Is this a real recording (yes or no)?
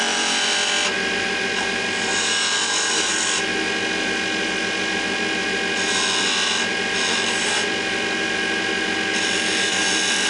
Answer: yes